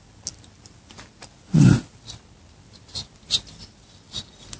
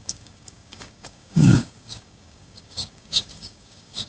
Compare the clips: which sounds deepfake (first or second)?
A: second